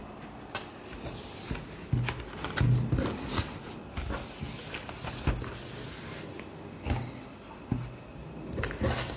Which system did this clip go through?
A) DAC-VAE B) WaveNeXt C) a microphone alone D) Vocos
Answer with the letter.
C